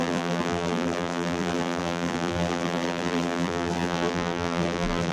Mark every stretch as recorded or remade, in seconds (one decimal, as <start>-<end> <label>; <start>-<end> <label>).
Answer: 0.0-5.1 remade